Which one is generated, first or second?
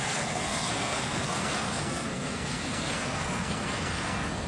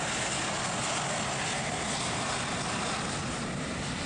first